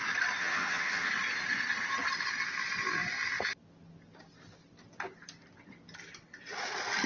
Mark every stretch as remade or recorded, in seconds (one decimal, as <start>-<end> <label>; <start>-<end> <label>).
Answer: 0.0-0.4 recorded; 0.4-1.1 remade; 1.1-7.1 recorded